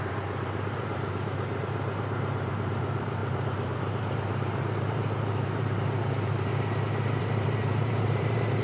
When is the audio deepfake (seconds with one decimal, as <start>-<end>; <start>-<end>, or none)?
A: 0.0-6.5; 7.2-8.6